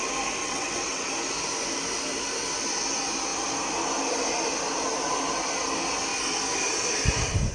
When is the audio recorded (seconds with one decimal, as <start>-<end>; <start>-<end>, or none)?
0.0-0.4; 1.1-7.5